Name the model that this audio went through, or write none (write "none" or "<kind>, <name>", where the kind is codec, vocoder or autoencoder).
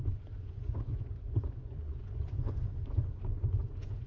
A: vocoder, Vocos